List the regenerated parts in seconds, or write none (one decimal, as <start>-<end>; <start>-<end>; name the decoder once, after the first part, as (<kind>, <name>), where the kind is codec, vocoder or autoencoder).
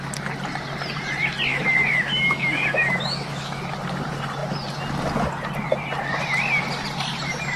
1.5-3.6 (autoencoder, DAC-VAE)